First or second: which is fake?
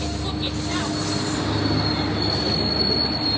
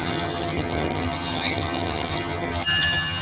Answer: second